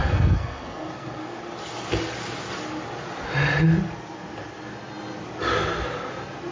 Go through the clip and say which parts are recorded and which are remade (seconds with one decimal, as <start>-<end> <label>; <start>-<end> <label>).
0.0-1.4 remade; 1.4-6.5 recorded